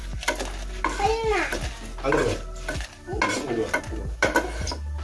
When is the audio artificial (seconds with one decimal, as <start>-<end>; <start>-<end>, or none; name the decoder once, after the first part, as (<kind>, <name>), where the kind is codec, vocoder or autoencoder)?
none